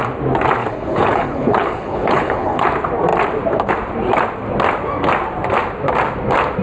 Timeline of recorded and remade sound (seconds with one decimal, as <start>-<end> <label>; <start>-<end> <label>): 0.0-0.6 recorded; 0.6-2.6 remade; 2.6-6.6 recorded